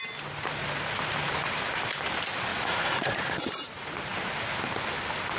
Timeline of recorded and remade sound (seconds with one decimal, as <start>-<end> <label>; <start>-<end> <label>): 0.0-2.5 recorded; 2.5-3.4 remade; 3.4-5.4 recorded

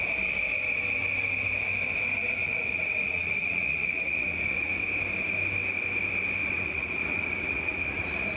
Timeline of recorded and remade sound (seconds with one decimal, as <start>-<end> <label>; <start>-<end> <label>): 0.0-2.4 recorded; 2.4-4.8 remade; 4.8-6.4 recorded; 6.4-8.4 remade